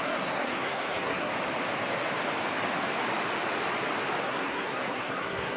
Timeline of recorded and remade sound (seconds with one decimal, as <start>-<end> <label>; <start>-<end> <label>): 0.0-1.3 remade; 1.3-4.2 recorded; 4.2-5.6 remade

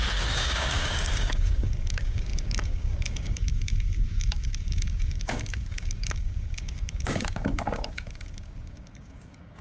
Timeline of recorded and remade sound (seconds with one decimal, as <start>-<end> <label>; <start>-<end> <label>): 0.0-9.6 remade

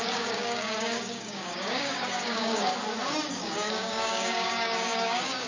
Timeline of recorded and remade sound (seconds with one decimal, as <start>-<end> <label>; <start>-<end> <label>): 0.0-2.7 remade; 2.7-3.3 recorded; 3.3-5.5 remade

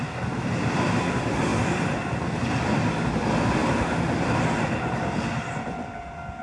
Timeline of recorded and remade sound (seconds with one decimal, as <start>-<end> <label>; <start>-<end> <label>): 0.0-1.5 recorded; 1.5-3.1 remade; 3.1-6.4 recorded

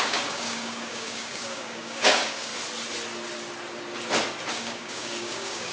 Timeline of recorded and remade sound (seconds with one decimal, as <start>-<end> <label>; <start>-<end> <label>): 0.0-2.5 remade; 2.5-4.5 recorded; 4.5-5.7 remade

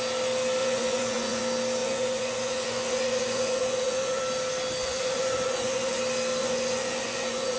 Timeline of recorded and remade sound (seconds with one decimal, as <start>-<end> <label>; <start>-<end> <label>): 0.0-0.6 recorded; 0.6-1.4 remade; 1.4-1.8 recorded; 1.8-4.2 remade; 4.2-4.8 recorded; 4.8-6.0 remade; 6.0-6.4 recorded; 6.4-7.6 remade

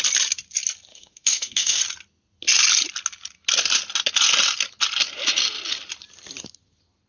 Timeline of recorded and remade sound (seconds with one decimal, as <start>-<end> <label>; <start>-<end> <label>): 0.0-0.9 recorded; 0.9-1.8 remade; 1.8-7.1 recorded

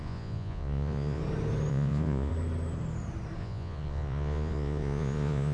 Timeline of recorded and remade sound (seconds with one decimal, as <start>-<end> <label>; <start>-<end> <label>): 0.0-1.2 remade; 1.2-1.7 recorded; 1.7-2.3 remade; 2.3-3.4 recorded; 3.4-5.5 remade